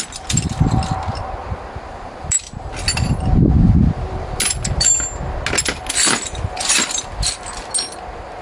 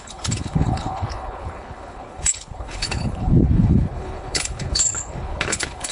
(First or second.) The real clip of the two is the first